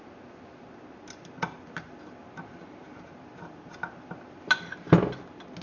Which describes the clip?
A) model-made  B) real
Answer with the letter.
B